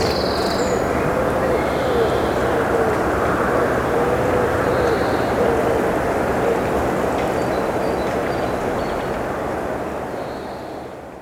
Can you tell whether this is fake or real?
real